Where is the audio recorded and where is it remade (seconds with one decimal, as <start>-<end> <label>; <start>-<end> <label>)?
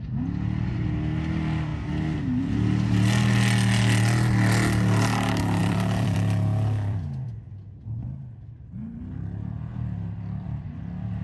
0.0-5.6 recorded; 5.6-7.5 remade; 7.5-8.0 recorded; 8.0-8.6 remade; 8.6-11.2 recorded